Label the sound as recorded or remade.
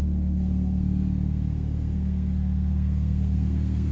remade